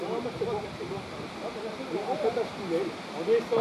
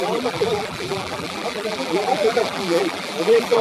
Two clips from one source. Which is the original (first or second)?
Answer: first